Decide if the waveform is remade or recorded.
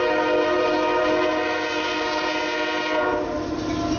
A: recorded